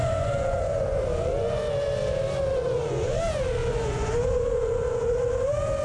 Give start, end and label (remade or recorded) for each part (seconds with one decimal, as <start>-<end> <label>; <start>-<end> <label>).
0.0-1.7 remade; 1.7-2.6 recorded; 2.6-3.2 remade; 3.2-3.6 recorded; 3.6-5.1 remade; 5.1-5.8 recorded

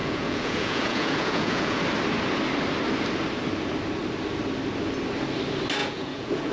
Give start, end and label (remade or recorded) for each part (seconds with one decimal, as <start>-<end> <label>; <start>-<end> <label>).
0.0-1.8 remade; 1.8-5.8 recorded; 5.8-6.5 remade

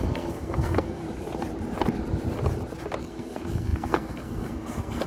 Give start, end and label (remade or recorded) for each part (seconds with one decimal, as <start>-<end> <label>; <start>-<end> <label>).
0.0-1.0 remade; 1.0-3.0 recorded; 3.0-5.1 remade

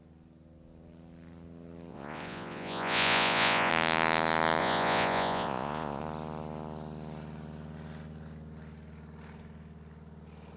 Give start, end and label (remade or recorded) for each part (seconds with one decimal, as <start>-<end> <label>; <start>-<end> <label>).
0.0-1.9 recorded; 1.9-3.7 remade; 3.7-4.6 recorded; 4.6-6.0 remade; 6.0-10.6 recorded

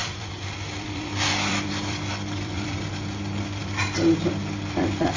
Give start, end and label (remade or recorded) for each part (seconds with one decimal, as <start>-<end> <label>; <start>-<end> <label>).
0.0-3.1 remade; 3.1-3.6 recorded; 3.6-4.1 remade; 4.1-5.2 recorded

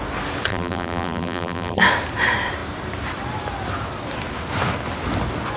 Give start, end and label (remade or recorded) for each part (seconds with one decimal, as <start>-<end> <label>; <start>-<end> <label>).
0.0-0.5 recorded; 0.5-1.8 remade; 1.8-5.6 recorded

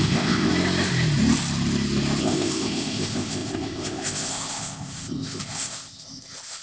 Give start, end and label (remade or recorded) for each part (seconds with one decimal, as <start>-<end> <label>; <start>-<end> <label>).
0.0-0.5 remade; 0.5-2.2 recorded; 2.2-6.6 remade

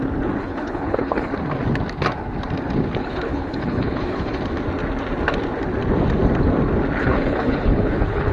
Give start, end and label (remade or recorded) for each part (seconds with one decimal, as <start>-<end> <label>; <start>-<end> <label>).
0.0-0.4 recorded; 0.4-1.3 remade; 1.3-3.0 recorded; 3.0-4.4 remade; 4.4-7.0 recorded; 7.0-8.3 remade